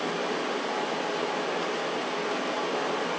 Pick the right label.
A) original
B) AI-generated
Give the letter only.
A